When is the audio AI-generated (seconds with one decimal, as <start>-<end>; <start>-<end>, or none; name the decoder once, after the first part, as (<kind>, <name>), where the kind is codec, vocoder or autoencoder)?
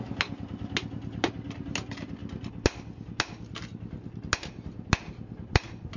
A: none